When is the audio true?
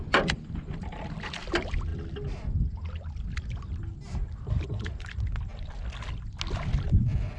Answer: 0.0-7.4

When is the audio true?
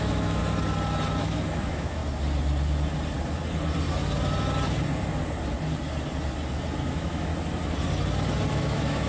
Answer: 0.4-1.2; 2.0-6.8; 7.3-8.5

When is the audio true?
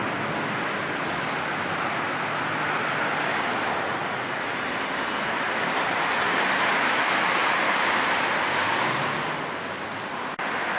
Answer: 0.0-10.8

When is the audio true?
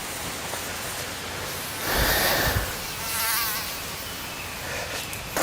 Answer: 0.0-5.4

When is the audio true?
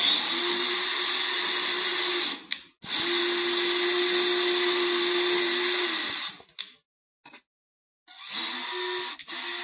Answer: 0.0-9.6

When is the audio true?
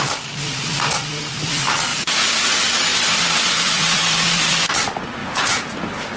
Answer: 0.0-1.9; 2.5-5.2; 5.7-6.2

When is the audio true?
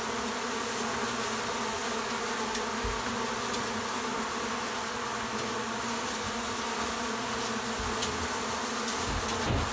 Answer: 0.0-9.7